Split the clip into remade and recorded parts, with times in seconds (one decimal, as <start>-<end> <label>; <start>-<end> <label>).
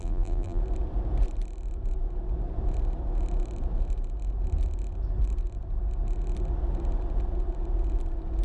0.0-0.6 remade; 0.6-8.4 recorded